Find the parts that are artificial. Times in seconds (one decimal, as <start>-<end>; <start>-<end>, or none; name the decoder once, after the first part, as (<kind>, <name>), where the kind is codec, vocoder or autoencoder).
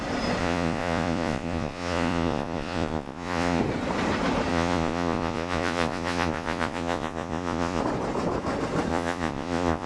0.4-3.6 (vocoder, Vocos); 4.5-7.8; 8.9-9.9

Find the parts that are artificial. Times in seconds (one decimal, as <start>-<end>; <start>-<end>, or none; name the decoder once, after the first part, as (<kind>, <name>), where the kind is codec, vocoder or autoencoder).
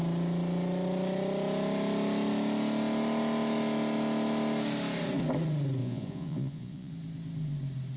5.8-6.9 (vocoder, Vocos)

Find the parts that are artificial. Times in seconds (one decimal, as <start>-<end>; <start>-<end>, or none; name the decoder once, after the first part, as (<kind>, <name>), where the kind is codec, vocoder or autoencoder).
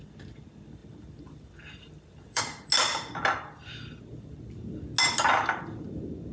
0.8-2.4 (vocoder, BigVGAN v2)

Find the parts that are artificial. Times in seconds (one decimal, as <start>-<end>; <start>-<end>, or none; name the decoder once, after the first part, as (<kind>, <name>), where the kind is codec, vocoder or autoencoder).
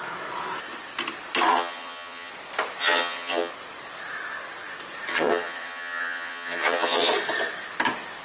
1.5-2.3 (vocoder, HiFi-GAN); 2.8-3.5; 5.1-7.1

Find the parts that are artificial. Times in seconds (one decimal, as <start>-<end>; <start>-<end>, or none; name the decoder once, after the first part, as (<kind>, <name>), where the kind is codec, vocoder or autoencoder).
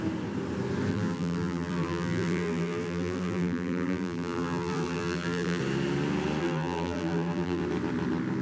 0.9-5.6 (vocoder, BigVGAN v2); 6.4-7.6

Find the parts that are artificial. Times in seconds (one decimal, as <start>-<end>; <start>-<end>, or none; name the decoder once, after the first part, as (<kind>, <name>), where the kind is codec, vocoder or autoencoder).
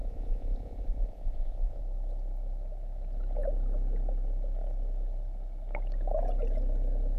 0.0-1.8 (vocoder, Vocos)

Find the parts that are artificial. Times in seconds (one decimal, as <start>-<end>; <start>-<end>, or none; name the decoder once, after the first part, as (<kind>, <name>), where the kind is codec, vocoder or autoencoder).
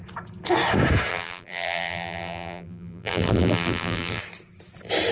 1.1-4.2 (vocoder, BigVGAN v2)